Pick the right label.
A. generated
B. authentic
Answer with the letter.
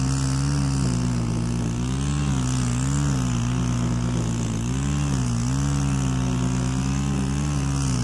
B